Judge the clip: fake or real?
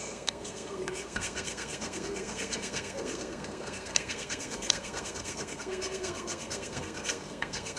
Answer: fake